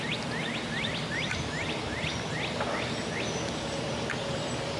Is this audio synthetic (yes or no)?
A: yes